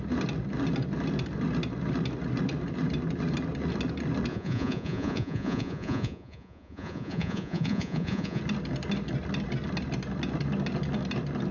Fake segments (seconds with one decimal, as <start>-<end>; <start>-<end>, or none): 4.3-8.4